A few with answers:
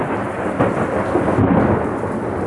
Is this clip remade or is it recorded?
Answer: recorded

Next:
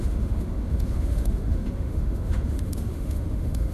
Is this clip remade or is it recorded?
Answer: remade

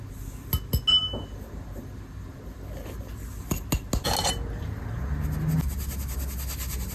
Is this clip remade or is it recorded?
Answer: recorded